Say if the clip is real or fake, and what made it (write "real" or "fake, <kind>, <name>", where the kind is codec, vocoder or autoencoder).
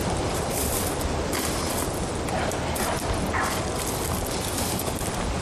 real